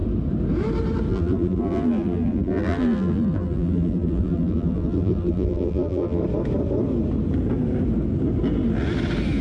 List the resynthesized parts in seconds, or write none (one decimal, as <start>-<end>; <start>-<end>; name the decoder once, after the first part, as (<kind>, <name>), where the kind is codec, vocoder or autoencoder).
1.1-6.2 (vocoder, BigVGAN v2)